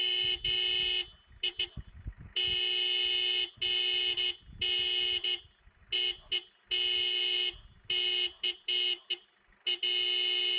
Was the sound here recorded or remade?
recorded